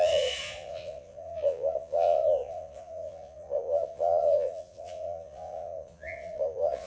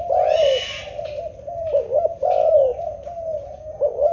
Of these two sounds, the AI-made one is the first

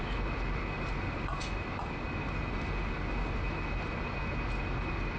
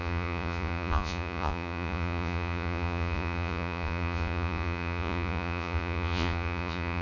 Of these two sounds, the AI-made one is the second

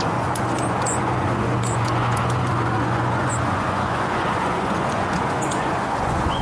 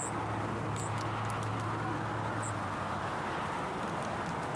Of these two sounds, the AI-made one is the first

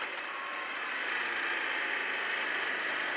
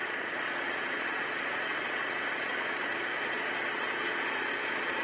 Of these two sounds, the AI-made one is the second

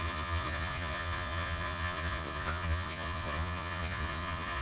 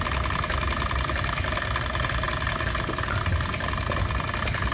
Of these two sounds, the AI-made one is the first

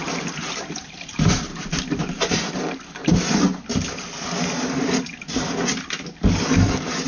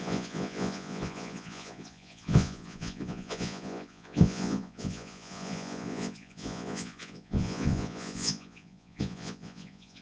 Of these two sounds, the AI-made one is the second